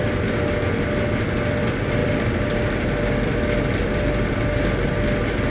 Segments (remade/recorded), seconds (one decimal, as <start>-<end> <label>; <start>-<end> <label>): 0.0-5.5 recorded